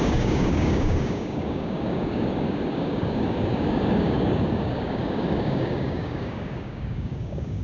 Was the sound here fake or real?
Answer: fake